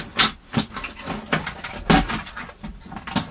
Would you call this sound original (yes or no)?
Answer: yes